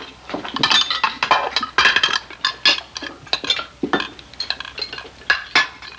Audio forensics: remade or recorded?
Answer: recorded